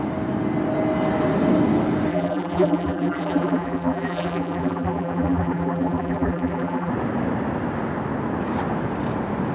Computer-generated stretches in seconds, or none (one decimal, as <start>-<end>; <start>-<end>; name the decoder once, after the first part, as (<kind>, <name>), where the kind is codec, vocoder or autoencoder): 2.1-6.9 (vocoder, BigVGAN v2)